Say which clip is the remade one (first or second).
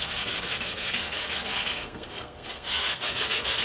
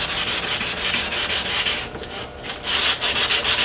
first